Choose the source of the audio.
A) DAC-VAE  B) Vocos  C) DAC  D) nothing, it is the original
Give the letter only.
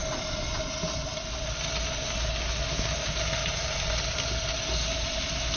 D